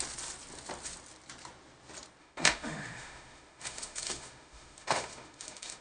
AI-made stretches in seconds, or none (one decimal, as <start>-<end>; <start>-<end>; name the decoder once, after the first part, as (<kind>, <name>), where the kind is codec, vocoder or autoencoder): 2.2-5.8 (autoencoder, DAC-VAE)